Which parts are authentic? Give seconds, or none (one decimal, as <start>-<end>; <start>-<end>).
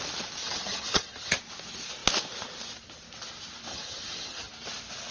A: 0.0-0.4; 1.4-3.7; 4.5-5.1